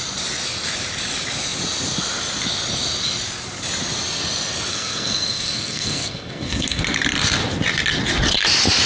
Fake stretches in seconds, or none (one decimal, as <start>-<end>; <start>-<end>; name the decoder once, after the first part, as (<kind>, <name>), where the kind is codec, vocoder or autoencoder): 4.7-6.8 (codec, SNAC)